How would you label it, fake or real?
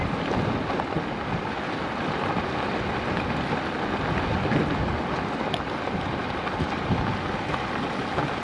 real